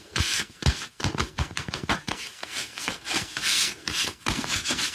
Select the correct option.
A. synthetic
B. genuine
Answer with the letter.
A